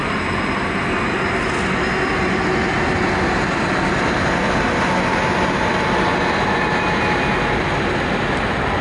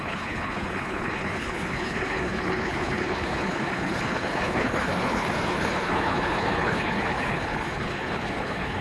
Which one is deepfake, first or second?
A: second